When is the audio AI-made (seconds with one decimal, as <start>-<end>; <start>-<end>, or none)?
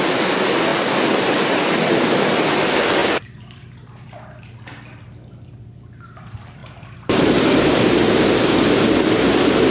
3.0-4.5; 6.6-8.9